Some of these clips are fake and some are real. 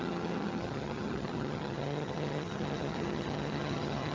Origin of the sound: fake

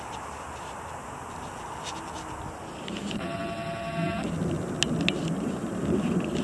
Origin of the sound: real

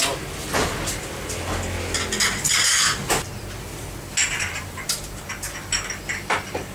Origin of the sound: real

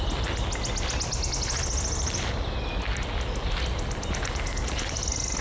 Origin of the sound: real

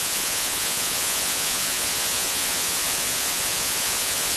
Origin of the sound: fake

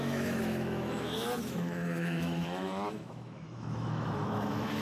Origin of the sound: fake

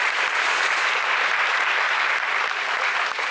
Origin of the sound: fake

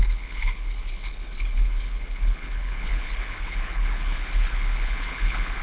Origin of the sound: fake